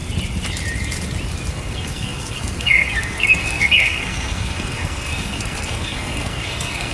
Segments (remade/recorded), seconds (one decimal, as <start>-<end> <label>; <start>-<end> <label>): 0.0-1.5 recorded; 1.5-6.9 remade